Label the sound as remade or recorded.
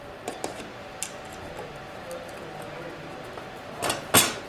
recorded